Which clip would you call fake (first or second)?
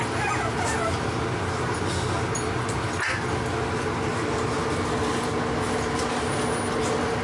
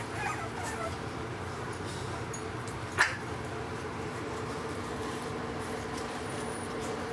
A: second